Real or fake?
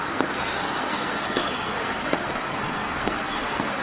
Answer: fake